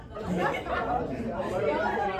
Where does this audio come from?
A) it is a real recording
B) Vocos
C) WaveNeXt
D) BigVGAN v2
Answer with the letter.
D